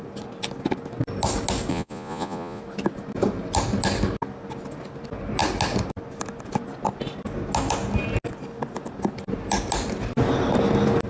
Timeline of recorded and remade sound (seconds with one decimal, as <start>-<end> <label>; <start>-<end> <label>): 0.0-1.7 recorded; 1.7-2.6 remade; 2.6-11.1 recorded